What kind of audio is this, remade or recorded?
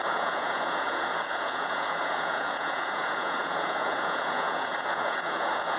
remade